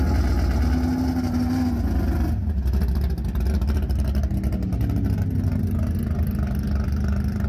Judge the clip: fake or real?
real